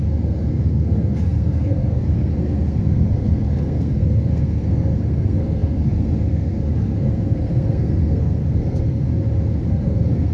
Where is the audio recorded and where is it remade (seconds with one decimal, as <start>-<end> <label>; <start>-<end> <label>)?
0.0-9.1 remade; 9.1-9.6 recorded; 9.6-10.3 remade